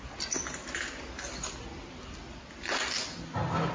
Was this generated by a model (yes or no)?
no